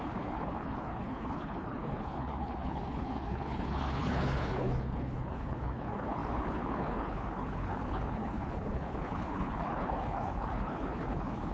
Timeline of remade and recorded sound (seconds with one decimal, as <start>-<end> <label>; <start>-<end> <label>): 0.0-11.5 remade